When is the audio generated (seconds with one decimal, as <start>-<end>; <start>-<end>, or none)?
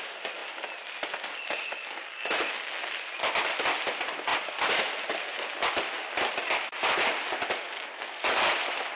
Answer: none